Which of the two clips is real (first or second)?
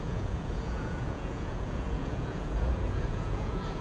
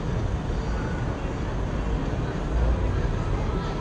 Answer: second